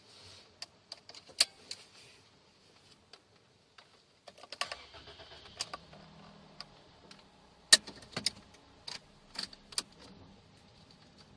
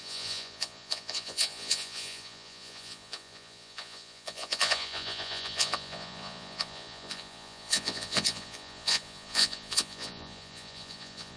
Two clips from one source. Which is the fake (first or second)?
second